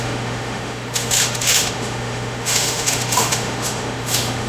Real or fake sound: fake